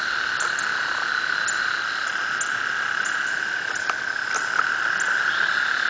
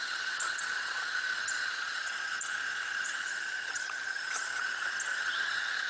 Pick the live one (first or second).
first